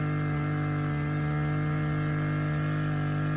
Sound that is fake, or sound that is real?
real